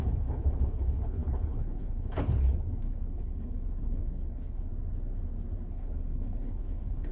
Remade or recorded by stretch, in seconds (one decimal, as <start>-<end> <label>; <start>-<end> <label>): 0.0-4.7 remade; 4.7-5.7 recorded; 5.7-7.1 remade